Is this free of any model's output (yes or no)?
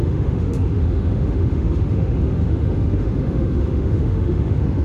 no